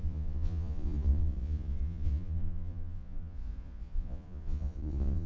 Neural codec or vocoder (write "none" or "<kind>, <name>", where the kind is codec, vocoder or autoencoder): vocoder, Vocos